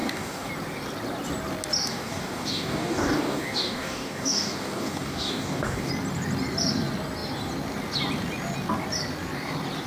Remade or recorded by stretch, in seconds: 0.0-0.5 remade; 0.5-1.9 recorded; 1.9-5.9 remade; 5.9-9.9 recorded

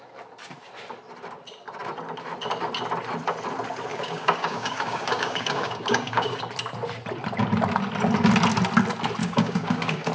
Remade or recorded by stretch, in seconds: 0.0-3.9 recorded; 3.9-6.3 remade; 6.3-9.2 recorded; 9.2-10.1 remade